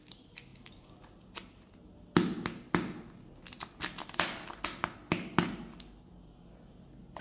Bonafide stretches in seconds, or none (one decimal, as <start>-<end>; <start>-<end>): 0.0-7.2